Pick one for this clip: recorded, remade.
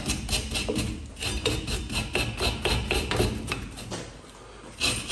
recorded